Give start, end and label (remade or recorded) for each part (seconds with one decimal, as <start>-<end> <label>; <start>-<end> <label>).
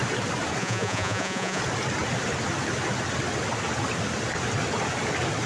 0.0-0.6 recorded; 0.6-1.6 remade; 1.6-5.5 recorded